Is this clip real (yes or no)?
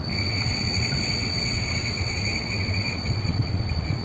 no